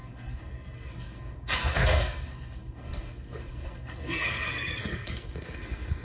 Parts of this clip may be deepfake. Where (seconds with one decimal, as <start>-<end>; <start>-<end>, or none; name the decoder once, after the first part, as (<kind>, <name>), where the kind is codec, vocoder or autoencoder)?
0.0-6.0 (codec, SNAC)